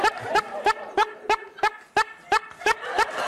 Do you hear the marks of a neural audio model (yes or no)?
no